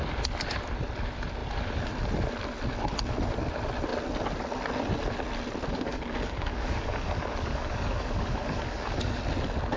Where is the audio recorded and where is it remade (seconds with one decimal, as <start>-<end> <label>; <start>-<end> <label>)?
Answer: 0.0-5.7 recorded; 5.7-9.2 remade; 9.2-9.8 recorded